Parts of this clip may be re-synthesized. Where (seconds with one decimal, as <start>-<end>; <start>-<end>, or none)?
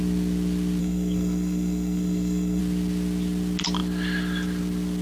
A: 0.8-2.6